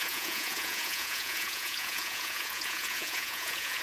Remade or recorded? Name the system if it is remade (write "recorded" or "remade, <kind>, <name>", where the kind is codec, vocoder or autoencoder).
remade, vocoder, Vocos